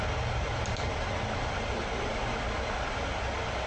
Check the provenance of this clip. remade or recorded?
recorded